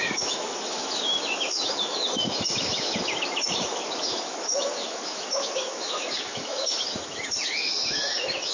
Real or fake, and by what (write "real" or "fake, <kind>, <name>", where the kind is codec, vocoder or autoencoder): fake, autoencoder, DAC-VAE